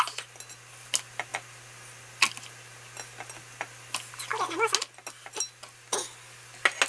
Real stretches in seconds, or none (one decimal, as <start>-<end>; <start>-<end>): 0.0-6.9

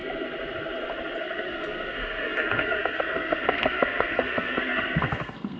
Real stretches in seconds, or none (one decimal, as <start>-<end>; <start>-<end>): 0.0-1.2